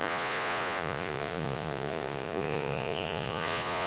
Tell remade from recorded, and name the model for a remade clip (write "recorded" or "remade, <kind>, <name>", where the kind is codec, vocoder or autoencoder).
remade, vocoder, Vocos